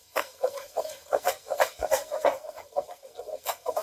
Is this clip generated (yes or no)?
yes